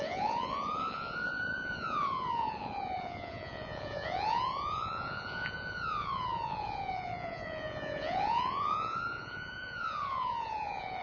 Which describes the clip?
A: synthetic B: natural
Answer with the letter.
A